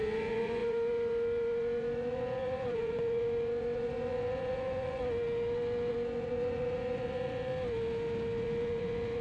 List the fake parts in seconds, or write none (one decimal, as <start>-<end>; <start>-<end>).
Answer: 0.0-5.0; 5.9-7.5; 8.4-9.2